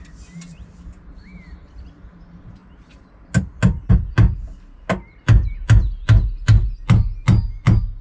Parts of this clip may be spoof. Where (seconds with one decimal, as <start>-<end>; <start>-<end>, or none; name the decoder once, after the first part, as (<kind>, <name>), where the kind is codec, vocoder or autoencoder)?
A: none